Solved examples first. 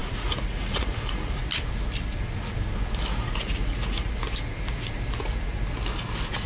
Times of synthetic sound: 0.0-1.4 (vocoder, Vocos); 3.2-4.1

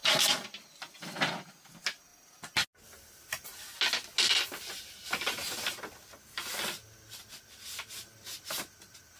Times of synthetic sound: none

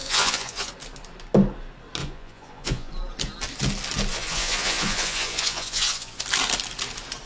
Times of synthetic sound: 0.0-0.7 (vocoder, Vocos); 2.0-2.9; 4.1-6.2

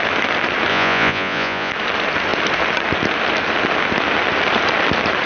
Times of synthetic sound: 0.7-1.7 (vocoder, Vocos)

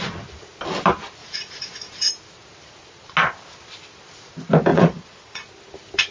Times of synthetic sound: 1.2-2.1 (vocoder, Vocos); 4.7-5.4

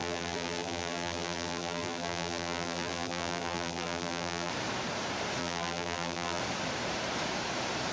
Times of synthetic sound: 0.0-4.5 (vocoder, BigVGAN v2); 5.4-6.4

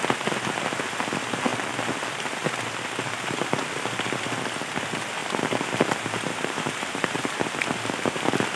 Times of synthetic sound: 5.2-7.6 (vocoder, BigVGAN v2)